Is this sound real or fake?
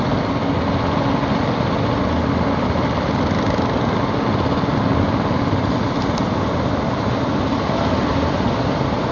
real